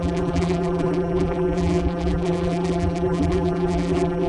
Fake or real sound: fake